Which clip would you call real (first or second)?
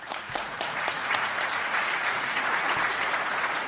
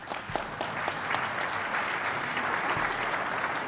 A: second